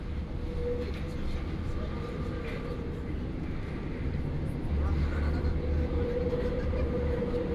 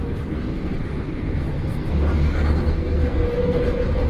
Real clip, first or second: first